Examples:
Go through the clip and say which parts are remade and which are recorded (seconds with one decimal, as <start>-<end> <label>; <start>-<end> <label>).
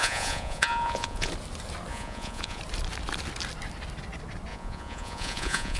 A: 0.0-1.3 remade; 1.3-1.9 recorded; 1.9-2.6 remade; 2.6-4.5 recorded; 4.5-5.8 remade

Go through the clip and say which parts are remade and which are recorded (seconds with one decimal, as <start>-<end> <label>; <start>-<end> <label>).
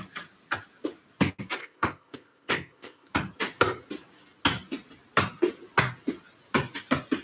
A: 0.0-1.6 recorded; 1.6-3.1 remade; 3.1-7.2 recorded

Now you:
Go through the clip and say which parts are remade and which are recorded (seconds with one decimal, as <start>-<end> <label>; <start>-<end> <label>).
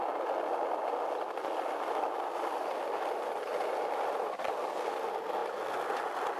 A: 0.0-6.4 recorded